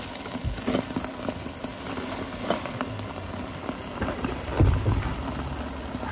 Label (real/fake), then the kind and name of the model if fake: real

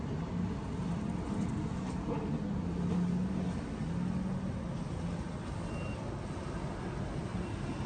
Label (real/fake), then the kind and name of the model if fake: real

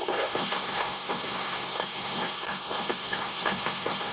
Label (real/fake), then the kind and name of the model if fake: fake, codec, SNAC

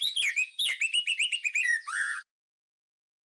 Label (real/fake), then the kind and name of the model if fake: fake, vocoder, Vocos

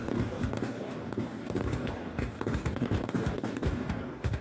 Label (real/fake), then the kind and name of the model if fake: fake, codec, DAC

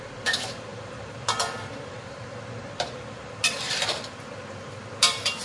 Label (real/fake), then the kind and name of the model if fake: fake, vocoder, BigVGAN v2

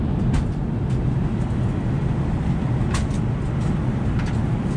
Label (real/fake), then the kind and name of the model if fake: real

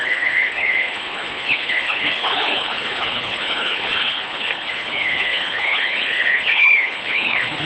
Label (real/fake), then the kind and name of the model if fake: fake, codec, HILCodec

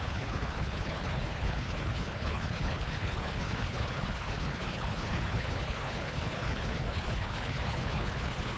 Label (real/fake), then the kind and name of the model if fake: fake, codec, HILCodec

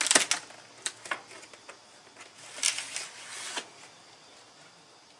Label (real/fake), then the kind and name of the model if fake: real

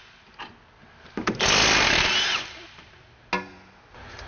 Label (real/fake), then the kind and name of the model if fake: real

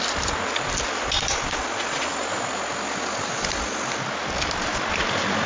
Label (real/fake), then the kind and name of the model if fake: real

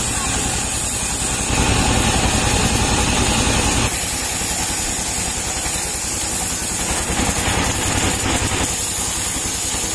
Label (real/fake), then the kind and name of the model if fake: real